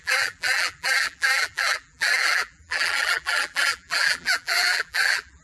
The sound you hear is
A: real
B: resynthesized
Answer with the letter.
B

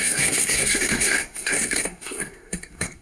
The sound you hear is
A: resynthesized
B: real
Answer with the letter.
A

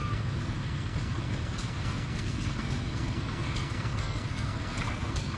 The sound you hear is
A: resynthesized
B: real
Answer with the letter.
A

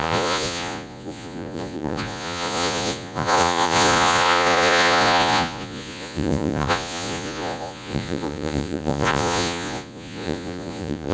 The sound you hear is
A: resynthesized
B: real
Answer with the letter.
A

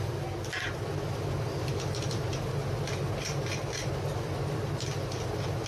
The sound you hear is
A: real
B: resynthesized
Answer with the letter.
A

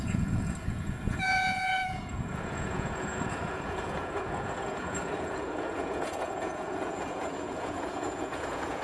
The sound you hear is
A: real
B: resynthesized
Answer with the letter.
B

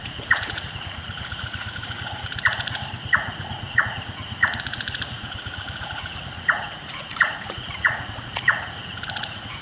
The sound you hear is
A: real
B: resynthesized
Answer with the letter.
B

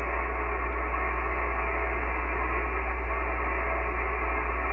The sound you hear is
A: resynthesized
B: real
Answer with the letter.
B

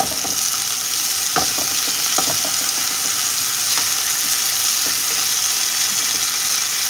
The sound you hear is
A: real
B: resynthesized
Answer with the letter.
A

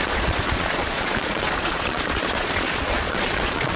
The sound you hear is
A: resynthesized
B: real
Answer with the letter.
A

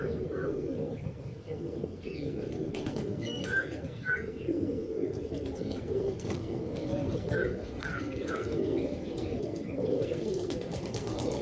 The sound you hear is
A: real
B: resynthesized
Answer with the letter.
B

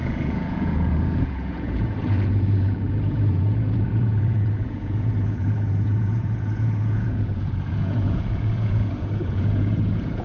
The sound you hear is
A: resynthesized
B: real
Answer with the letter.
A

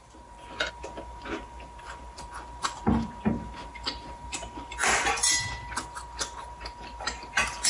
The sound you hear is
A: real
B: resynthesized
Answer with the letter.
B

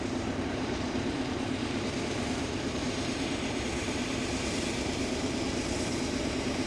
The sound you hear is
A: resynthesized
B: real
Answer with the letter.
A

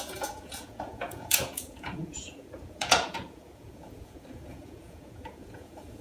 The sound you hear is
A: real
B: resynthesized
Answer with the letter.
B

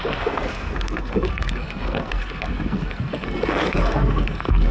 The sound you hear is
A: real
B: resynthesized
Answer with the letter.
B